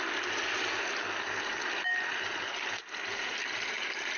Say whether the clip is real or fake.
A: real